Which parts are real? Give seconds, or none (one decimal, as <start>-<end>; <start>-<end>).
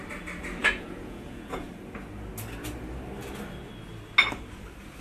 0.0-0.6; 1.7-5.0